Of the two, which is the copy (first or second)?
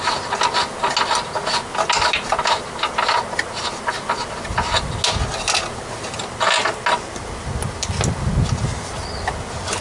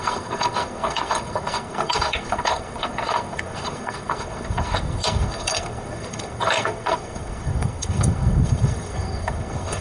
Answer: second